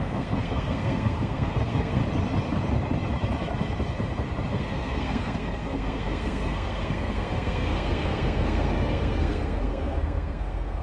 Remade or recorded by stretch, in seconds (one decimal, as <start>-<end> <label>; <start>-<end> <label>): 0.0-2.0 remade; 2.0-4.5 recorded; 4.5-10.8 remade